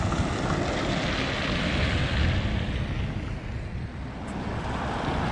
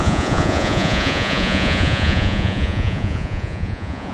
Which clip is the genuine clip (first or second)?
first